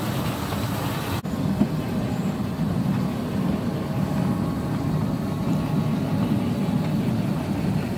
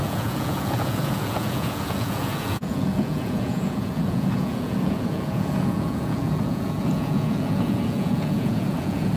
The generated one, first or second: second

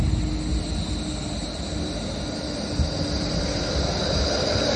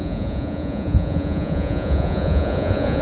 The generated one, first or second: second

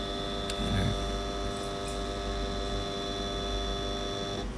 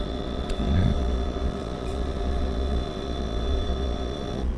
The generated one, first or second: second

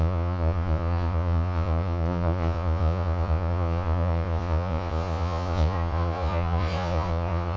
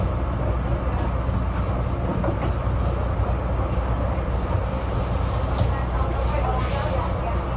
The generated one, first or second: first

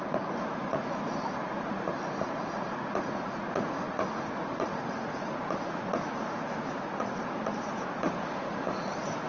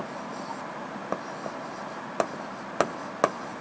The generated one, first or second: first